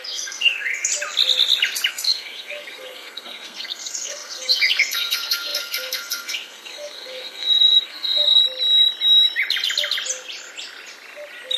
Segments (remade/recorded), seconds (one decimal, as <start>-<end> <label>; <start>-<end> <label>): 0.0-0.9 remade; 0.9-1.9 recorded; 1.9-8.4 remade; 8.4-11.6 recorded